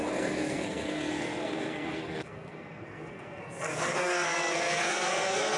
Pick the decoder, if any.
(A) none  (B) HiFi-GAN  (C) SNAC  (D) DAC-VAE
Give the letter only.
C